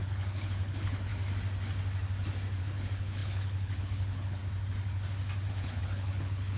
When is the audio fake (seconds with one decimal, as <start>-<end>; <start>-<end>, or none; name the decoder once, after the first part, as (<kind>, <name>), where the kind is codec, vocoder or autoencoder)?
0.0-1.1 (codec, HILCodec); 2.6-4.4; 5.5-6.6